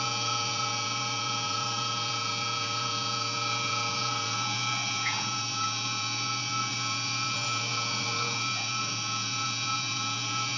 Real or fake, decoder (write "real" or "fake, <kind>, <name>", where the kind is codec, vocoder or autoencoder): fake, vocoder, Vocos